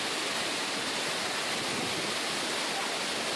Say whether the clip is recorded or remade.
recorded